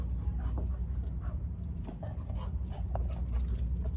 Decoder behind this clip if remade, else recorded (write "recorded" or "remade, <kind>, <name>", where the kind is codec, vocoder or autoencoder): recorded